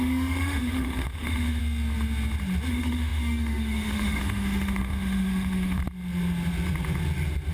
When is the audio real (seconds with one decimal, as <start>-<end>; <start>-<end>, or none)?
1.6-2.7; 5.8-7.5